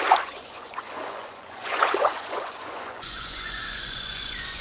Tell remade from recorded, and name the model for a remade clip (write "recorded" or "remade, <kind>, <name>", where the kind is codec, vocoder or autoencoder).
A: remade, vocoder, Vocos